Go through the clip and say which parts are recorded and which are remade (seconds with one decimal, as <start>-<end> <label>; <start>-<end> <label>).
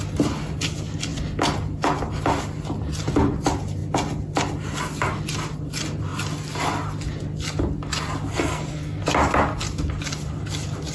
0.0-8.3 recorded; 8.3-9.0 remade; 9.0-10.9 recorded